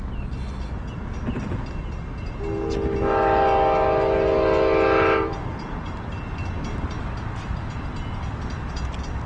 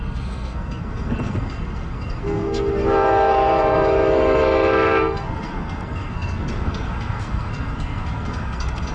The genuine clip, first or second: first